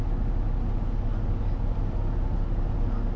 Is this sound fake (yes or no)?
no